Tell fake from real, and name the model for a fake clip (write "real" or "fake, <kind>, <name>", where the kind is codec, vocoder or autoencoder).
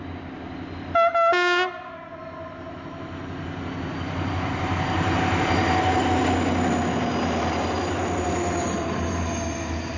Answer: real